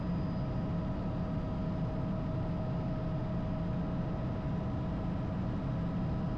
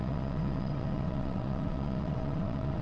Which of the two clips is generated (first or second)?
second